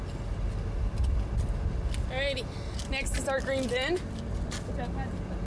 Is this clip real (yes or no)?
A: yes